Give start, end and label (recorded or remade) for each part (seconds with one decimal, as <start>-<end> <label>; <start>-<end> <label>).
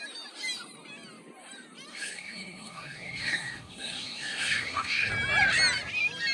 0.0-1.9 recorded; 1.9-5.1 remade; 5.1-6.3 recorded